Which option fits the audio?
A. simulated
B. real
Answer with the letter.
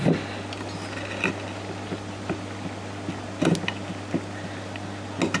B